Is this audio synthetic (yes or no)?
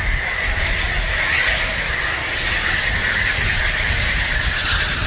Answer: no